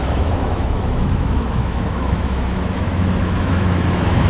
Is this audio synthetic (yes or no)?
yes